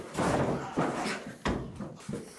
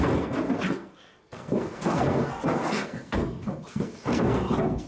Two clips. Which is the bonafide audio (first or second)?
first